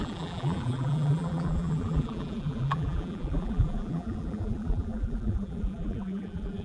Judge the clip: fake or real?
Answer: fake